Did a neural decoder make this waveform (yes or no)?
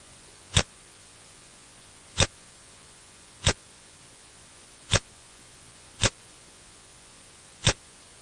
yes